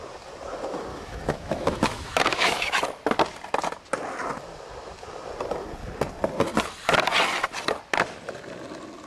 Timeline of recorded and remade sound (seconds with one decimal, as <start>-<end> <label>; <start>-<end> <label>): 0.0-0.9 recorded; 0.9-2.8 remade; 2.8-9.1 recorded